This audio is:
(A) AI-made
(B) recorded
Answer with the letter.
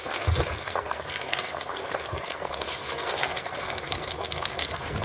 A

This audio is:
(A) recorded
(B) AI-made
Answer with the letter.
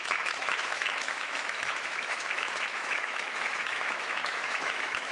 B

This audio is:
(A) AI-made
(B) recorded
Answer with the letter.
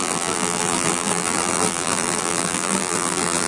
A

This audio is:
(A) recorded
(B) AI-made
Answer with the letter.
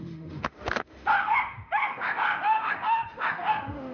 B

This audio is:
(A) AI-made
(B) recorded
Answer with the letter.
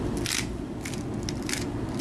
B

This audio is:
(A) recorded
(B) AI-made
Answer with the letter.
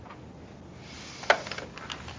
A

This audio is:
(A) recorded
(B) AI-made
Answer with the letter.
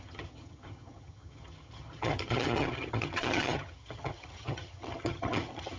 B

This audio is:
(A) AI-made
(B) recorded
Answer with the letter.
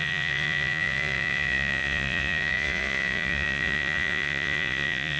A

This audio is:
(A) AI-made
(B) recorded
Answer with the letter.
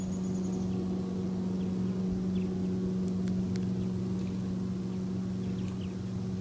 B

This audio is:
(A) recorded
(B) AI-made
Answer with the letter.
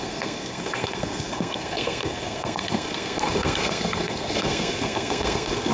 B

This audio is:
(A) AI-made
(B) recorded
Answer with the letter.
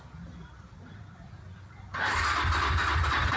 B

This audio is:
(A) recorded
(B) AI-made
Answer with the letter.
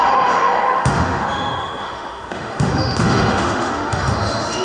B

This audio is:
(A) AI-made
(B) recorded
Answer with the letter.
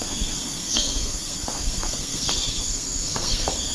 A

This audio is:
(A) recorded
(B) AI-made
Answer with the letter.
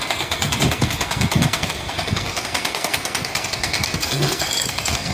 B